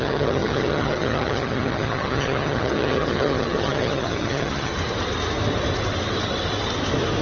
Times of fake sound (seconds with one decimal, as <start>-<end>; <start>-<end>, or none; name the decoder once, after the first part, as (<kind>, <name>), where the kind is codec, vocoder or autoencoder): 0.0-4.7 (vocoder, HiFi-GAN)